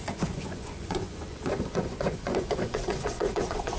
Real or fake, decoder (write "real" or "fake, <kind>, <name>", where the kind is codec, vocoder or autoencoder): fake, vocoder, Vocos